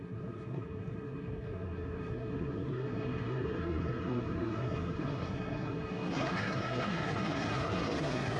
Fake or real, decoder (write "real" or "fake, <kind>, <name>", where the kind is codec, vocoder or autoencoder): fake, codec, SNAC